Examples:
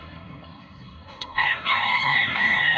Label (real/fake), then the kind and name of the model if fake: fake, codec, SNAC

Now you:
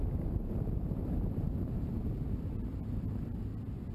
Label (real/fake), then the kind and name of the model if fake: fake, vocoder, BigVGAN v2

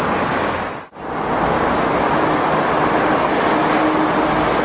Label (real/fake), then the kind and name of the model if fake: real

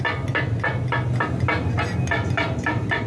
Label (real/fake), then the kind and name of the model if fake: real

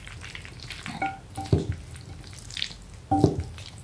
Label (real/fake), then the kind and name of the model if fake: real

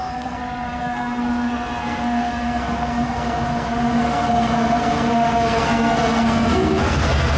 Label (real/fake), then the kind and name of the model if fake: fake, codec, SNAC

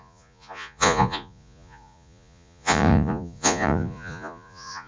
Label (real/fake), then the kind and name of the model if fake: fake, vocoder, Vocos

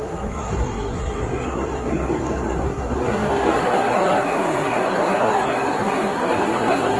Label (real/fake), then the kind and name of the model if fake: fake, codec, SNAC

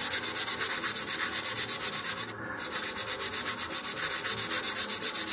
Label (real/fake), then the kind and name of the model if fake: real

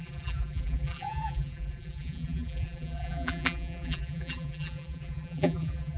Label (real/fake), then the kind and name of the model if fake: fake, vocoder, BigVGAN v2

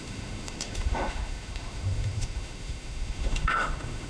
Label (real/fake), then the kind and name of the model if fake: fake, autoencoder, DAC-VAE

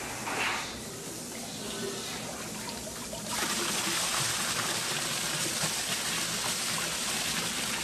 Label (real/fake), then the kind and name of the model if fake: real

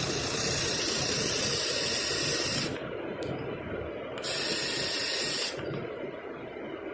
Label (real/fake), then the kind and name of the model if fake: fake, vocoder, BigVGAN v2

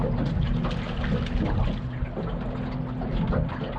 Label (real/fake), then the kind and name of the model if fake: real